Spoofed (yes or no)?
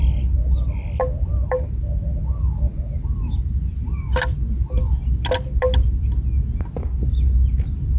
no